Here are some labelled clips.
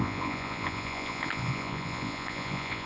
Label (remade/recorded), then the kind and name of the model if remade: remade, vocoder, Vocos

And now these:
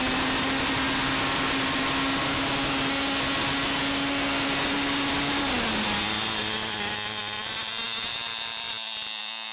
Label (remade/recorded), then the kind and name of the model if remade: recorded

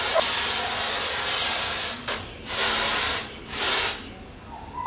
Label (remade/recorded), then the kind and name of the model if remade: recorded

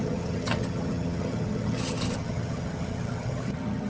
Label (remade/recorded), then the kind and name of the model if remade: remade, vocoder, HiFi-GAN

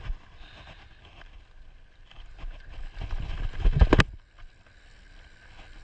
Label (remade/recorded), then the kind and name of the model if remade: recorded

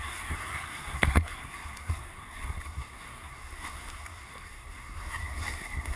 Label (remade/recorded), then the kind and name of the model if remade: remade, codec, SNAC